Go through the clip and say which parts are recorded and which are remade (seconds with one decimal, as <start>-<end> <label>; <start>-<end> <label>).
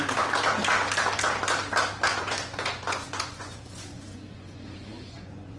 0.0-2.1 recorded; 2.1-5.6 remade